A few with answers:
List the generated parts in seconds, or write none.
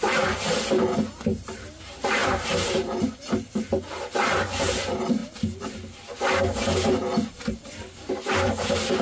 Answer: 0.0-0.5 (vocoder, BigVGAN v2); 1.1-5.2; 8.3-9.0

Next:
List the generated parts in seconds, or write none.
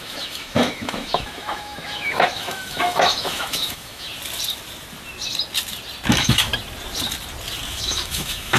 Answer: 0.0-4.1 (autoencoder, DAC-VAE); 6.1-6.5; 7.7-8.6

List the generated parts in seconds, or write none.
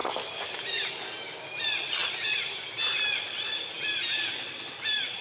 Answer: none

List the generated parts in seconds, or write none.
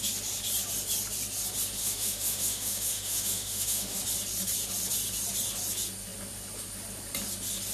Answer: 1.8-4.0 (autoencoder, DAC-VAE)